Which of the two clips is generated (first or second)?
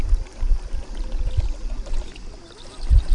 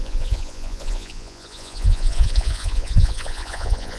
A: second